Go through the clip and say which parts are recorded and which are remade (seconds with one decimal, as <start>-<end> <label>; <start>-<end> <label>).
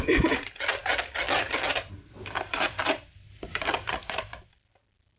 0.0-5.2 remade